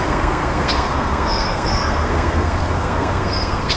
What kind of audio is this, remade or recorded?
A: remade